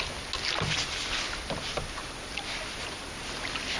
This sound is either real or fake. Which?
real